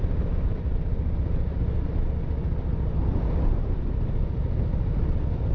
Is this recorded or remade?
recorded